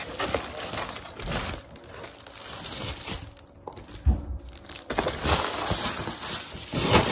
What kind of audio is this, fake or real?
real